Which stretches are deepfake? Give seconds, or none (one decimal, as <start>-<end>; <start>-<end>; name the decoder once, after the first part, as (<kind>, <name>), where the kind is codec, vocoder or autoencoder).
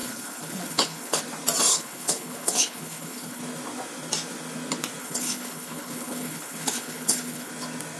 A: 0.0-1.2 (codec, HILCodec); 1.7-3.4; 5.0-7.5